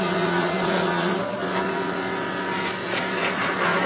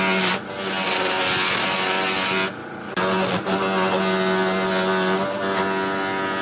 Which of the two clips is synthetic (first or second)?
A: first